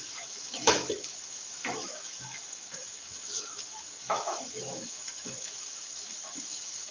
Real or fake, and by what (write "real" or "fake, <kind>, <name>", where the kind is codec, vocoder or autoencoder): fake, autoencoder, DAC-VAE